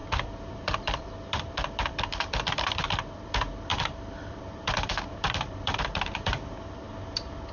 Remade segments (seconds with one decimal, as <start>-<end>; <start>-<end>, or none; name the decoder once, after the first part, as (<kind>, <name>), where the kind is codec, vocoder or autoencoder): 0.0-7.5 (vocoder, BigVGAN v2)